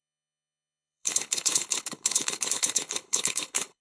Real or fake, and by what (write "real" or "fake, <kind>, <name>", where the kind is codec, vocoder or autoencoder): fake, codec, HILCodec